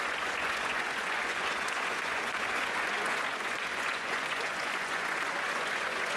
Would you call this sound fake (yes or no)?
yes